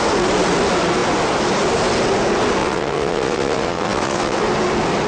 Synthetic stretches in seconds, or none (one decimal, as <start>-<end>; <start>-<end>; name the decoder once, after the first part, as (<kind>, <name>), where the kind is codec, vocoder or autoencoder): 2.6-4.4 (vocoder, WaveNeXt)

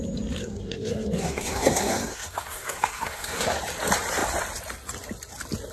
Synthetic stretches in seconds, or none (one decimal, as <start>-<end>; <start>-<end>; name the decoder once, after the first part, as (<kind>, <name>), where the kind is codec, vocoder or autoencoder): 0.4-3.6 (codec, SNAC)

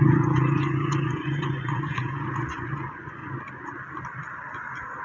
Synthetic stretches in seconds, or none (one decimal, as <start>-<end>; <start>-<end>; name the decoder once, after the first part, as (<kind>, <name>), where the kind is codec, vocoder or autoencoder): 0.0-3.2 (vocoder, Vocos)

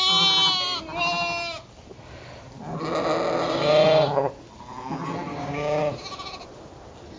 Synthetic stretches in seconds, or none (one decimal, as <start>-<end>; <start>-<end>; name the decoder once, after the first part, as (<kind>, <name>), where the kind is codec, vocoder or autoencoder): 5.3-5.8 (codec, DAC)

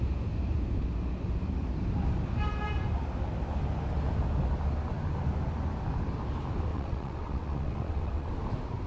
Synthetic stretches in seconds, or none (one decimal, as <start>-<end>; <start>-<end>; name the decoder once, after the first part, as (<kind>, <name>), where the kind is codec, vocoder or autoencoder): 6.7-8.3 (vocoder, WaveNeXt)